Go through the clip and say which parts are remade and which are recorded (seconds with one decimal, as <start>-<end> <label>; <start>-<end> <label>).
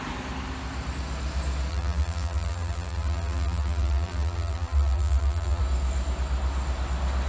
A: 0.0-1.7 recorded; 1.7-5.6 remade; 5.6-7.3 recorded